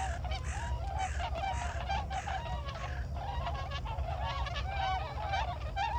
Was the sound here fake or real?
real